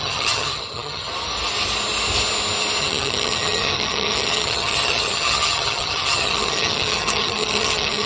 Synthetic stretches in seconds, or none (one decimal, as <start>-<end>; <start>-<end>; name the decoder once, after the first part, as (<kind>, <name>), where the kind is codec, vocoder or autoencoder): 0.0-1.1 (vocoder, HiFi-GAN); 2.8-8.1